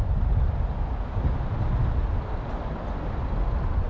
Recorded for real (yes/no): yes